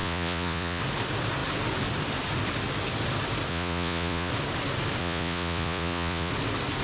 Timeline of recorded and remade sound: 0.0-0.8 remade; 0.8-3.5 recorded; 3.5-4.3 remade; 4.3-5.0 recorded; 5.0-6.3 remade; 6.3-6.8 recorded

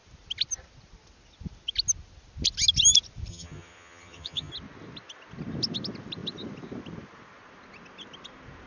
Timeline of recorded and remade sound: 0.0-3.3 recorded; 3.3-4.5 remade; 4.5-8.7 recorded